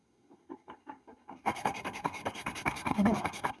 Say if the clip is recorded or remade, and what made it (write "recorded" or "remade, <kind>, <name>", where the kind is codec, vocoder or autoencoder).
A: remade, codec, SNAC